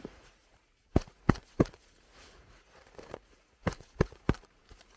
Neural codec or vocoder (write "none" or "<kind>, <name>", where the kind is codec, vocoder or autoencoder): vocoder, Vocos